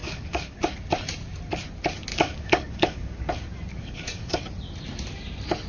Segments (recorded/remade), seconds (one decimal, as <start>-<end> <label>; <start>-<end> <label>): 0.0-0.6 remade; 0.6-2.1 recorded; 2.1-3.3 remade; 3.3-3.7 recorded; 3.7-4.4 remade; 4.4-5.7 recorded